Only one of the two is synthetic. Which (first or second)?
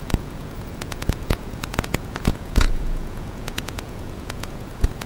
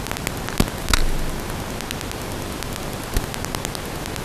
first